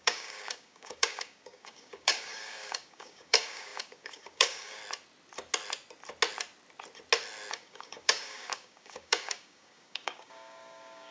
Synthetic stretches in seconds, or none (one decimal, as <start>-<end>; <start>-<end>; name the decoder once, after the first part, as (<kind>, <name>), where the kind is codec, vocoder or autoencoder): 0.0-4.8 (codec, DAC); 7.5-11.1